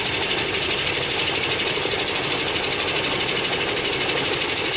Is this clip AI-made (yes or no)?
no